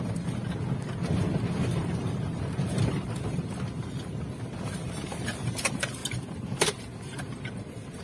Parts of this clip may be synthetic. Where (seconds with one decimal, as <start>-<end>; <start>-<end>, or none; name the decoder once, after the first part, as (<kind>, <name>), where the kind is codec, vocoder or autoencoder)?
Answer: 0.0-0.4 (vocoder, BigVGAN v2); 1.5-3.5; 4.6-6.0; 7.0-8.0